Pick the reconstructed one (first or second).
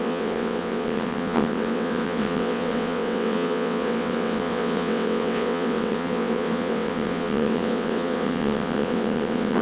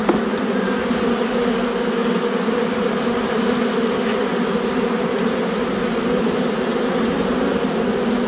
first